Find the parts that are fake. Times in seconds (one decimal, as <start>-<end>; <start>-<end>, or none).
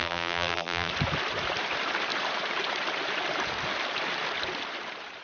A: 0.0-0.9